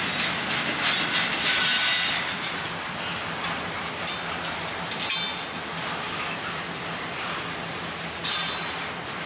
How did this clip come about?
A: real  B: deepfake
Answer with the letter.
A